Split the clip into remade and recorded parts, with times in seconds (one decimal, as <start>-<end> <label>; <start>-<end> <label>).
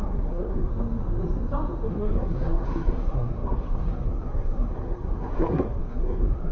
0.0-0.7 remade; 0.7-1.9 recorded; 1.9-6.5 remade